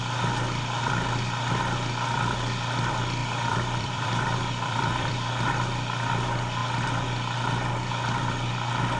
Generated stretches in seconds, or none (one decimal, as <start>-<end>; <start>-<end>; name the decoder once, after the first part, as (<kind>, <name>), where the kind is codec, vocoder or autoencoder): 3.2-5.3 (vocoder, BigVGAN v2)